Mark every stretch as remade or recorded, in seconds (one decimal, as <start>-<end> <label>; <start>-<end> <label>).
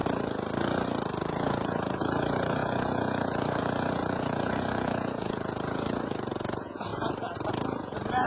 0.0-1.1 recorded; 1.1-6.9 remade; 6.9-7.5 recorded; 7.5-8.3 remade